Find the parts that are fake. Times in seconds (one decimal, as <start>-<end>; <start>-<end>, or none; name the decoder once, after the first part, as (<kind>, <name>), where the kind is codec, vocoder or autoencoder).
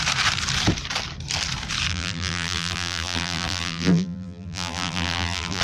1.9-5.6 (vocoder, BigVGAN v2)